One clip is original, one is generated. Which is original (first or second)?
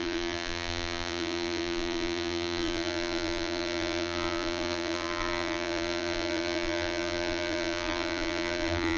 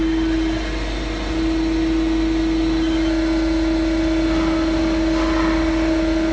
second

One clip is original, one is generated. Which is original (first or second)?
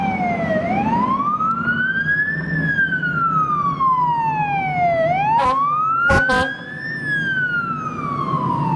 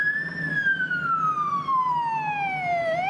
first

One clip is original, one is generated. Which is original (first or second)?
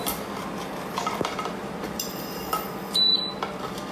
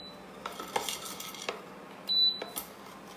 second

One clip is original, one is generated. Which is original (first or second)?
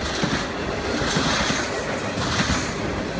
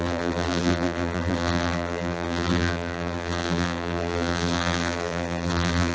first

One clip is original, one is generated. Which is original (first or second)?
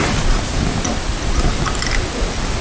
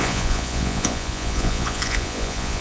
first